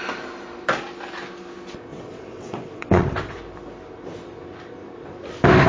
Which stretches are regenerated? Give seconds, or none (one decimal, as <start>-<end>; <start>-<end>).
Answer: 1.9-3.4